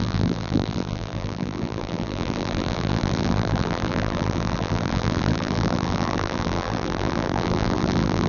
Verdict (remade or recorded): remade